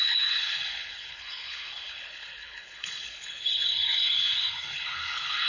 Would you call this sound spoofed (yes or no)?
yes